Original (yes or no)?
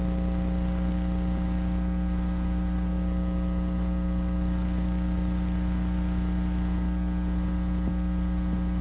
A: yes